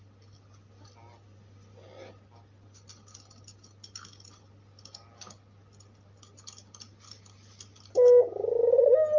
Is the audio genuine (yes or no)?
yes